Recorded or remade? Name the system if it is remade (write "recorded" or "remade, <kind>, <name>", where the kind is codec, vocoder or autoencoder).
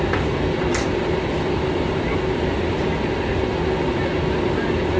recorded